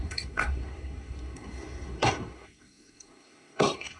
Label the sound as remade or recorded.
remade